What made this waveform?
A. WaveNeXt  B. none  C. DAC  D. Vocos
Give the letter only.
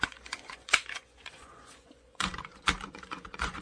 D